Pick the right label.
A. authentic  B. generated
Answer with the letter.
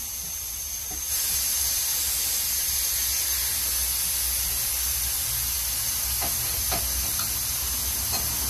A